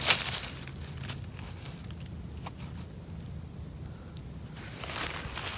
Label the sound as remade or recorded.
recorded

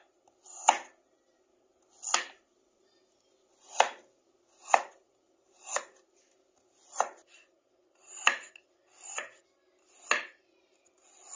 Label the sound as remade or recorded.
recorded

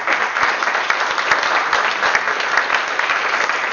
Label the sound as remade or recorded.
recorded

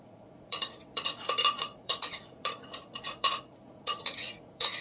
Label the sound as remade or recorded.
remade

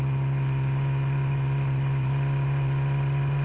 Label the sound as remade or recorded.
recorded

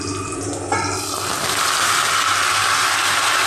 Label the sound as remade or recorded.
recorded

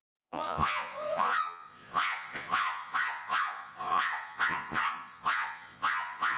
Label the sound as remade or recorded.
remade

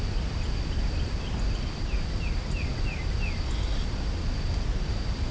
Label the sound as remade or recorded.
recorded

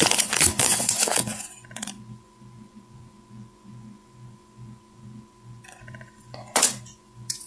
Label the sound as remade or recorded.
remade